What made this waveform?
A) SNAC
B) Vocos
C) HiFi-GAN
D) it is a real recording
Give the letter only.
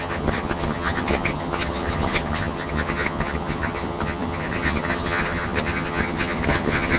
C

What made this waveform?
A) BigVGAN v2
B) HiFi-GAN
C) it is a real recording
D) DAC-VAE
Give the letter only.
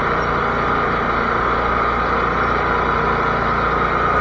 C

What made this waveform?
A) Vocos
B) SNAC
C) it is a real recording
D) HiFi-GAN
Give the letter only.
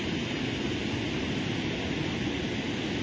C